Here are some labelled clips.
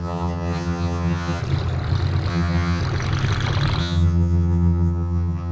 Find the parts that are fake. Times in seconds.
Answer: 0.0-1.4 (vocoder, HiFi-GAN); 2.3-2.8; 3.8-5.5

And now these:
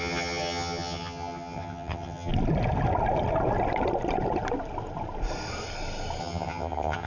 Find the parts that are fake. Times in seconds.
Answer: 0.0-2.3 (vocoder, HiFi-GAN); 6.2-7.1

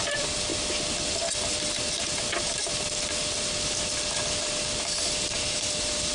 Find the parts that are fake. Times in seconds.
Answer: none

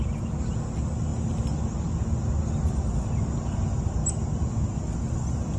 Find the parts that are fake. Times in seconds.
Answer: none

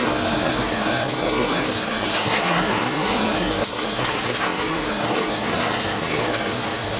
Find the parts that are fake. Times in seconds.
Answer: 0.0-7.0 (codec, SNAC)

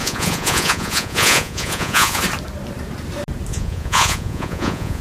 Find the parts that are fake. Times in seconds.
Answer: 0.0-2.2 (vocoder, Vocos); 3.5-5.0